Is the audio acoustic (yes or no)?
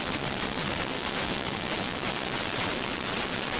no